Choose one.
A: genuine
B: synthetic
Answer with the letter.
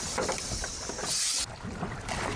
B